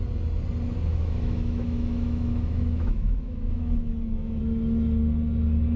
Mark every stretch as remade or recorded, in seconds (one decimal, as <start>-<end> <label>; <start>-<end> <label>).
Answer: 0.0-0.9 recorded; 0.9-4.4 remade; 4.4-5.8 recorded